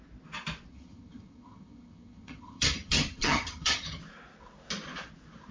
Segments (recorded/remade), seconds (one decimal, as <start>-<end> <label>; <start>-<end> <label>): 0.0-0.7 recorded; 0.7-4.0 remade; 4.0-5.5 recorded